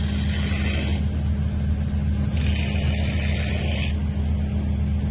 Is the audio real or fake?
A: real